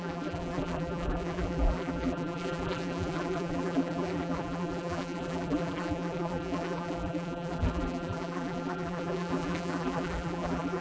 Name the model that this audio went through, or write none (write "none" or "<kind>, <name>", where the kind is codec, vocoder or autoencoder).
vocoder, BigVGAN v2